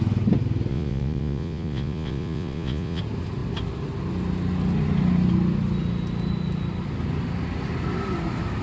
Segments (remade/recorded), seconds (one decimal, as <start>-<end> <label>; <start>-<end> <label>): 0.0-0.7 recorded; 0.7-3.0 remade; 3.0-8.6 recorded